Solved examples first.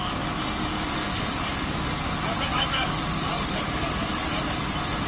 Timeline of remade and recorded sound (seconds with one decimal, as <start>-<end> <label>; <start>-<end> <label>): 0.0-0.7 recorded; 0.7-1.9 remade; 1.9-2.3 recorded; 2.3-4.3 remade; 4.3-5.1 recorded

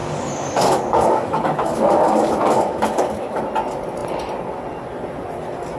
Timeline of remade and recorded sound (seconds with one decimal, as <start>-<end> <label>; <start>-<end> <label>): 0.0-3.4 remade; 3.4-5.8 recorded

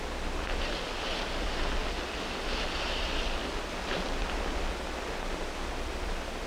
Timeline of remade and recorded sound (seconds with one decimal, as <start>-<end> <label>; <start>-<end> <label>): 0.0-6.5 recorded

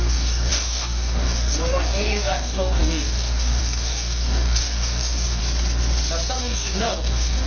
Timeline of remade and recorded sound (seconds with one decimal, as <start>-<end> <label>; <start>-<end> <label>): 0.0-5.4 remade; 5.4-6.4 recorded; 6.4-7.5 remade